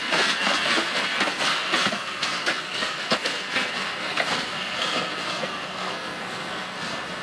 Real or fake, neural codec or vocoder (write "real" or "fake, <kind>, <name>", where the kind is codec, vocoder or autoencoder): fake, codec, SNAC